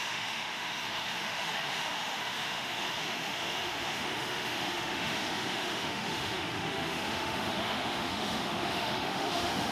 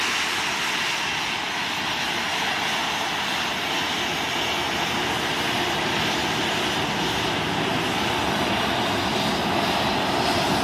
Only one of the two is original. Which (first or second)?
second